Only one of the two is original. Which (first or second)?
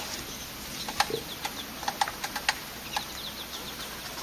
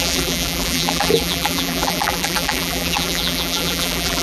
first